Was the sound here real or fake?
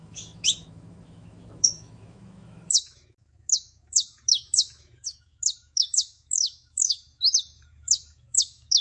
fake